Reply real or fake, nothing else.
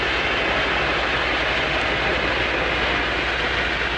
real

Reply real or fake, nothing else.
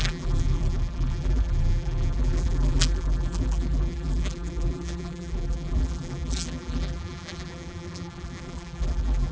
fake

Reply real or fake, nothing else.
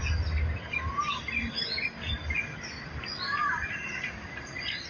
real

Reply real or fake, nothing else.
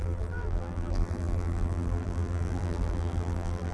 fake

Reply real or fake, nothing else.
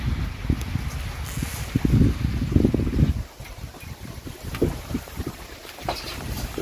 real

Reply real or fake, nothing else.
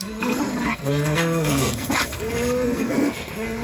fake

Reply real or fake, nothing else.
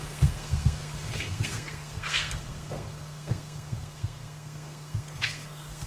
fake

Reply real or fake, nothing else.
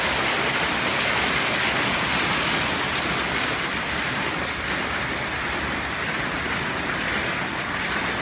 real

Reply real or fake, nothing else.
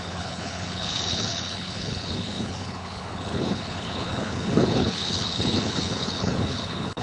fake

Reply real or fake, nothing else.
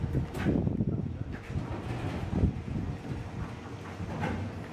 real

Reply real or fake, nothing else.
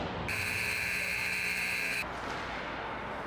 real